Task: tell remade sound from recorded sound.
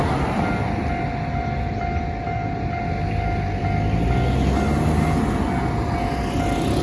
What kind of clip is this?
recorded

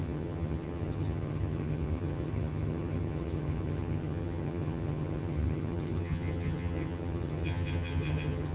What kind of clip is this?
remade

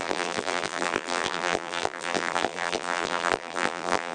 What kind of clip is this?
remade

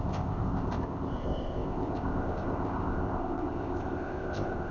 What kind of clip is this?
remade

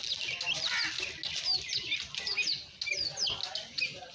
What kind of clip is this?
recorded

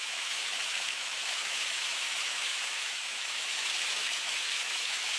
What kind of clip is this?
remade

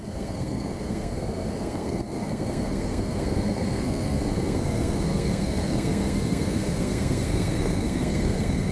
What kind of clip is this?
remade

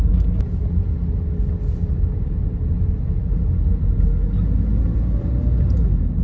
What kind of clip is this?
recorded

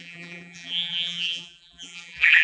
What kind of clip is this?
remade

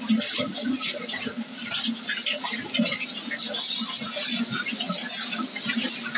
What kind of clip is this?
recorded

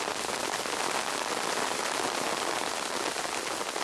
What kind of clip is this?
recorded